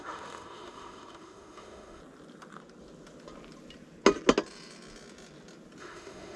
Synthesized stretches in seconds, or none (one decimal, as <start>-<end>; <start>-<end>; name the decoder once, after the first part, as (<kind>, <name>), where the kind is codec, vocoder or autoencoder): 0.0-2.0 (autoencoder, DAC-VAE); 5.8-6.4

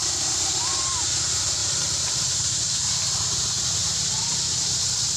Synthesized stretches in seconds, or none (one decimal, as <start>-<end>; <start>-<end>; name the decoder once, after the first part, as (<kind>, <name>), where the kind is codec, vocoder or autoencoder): 0.0-0.8 (vocoder, BigVGAN v2); 1.6-2.6

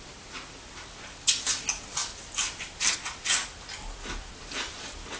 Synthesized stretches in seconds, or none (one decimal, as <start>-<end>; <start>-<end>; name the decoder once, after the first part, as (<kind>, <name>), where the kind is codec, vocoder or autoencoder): none

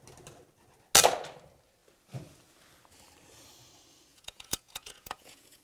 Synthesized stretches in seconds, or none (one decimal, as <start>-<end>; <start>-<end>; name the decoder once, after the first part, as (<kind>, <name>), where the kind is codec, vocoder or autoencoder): 4.1-5.6 (vocoder, Vocos)

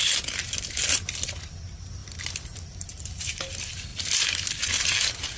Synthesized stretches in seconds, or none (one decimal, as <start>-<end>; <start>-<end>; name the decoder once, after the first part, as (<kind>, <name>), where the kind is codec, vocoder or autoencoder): none

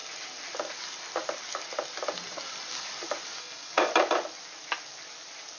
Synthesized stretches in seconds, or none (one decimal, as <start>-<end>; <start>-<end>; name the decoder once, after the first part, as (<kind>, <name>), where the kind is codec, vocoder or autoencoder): 3.4-3.9 (codec, SNAC)

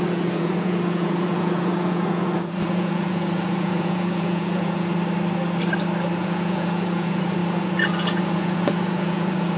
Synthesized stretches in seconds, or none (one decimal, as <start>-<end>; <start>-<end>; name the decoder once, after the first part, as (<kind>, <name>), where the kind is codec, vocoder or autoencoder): 0.0-4.9 (vocoder, Vocos); 6.2-9.6

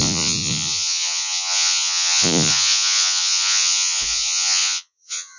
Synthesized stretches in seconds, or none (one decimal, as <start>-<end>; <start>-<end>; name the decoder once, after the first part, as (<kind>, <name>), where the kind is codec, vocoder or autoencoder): 0.0-5.4 (vocoder, Vocos)